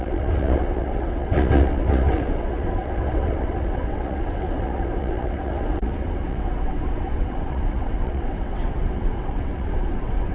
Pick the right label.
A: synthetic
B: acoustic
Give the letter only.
A